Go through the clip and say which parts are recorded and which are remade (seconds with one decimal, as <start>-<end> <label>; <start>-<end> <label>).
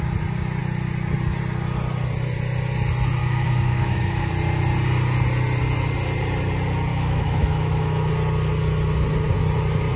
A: 0.0-3.2 recorded; 3.2-4.3 remade; 4.3-6.9 recorded; 6.9-8.1 remade; 8.1-10.0 recorded